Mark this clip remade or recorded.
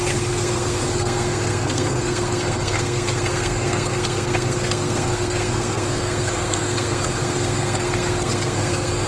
remade